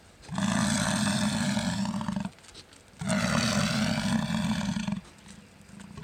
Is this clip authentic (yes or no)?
yes